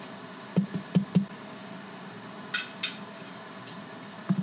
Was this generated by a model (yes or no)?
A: no